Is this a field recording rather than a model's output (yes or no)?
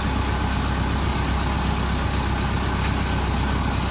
yes